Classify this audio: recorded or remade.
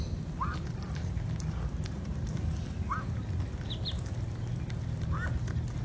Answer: recorded